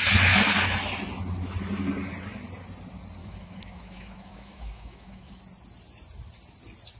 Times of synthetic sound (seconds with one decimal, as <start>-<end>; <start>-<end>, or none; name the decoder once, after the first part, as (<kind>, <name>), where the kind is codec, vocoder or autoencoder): 3.2-5.3 (autoencoder, DAC-VAE)